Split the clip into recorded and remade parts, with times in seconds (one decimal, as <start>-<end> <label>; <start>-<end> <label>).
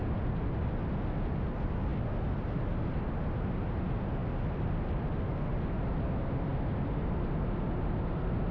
0.0-8.5 recorded